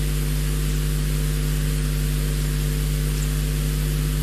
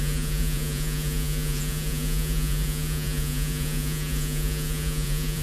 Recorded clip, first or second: first